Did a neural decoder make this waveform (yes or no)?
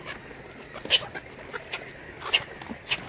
no